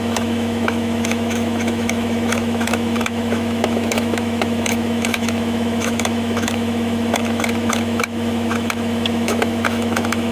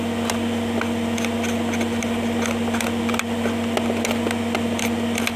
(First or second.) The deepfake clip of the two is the first